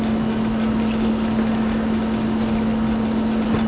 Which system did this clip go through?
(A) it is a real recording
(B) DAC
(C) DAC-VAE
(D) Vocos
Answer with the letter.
A